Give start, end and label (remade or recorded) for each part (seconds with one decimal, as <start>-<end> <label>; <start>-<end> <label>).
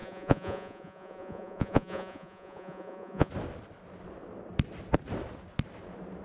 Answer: 0.0-3.3 remade; 3.3-6.2 recorded